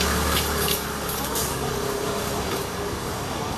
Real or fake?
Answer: fake